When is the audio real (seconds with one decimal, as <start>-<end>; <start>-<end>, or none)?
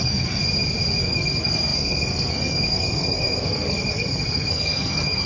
0.4-1.0